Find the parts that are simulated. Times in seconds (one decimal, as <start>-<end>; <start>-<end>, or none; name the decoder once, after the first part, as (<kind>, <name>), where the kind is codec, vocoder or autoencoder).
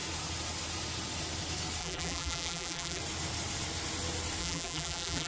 1.8-3.0 (vocoder, BigVGAN v2); 4.4-5.3